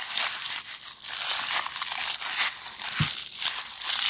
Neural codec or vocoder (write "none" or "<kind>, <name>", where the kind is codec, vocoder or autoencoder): none